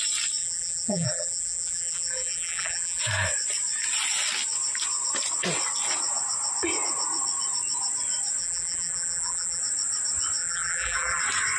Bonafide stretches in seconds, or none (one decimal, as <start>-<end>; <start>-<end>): 0.0-0.4; 3.0-8.4; 9.6-10.4; 11.2-11.6